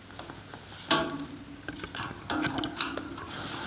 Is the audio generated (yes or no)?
no